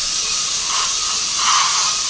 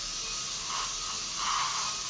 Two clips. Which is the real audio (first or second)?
second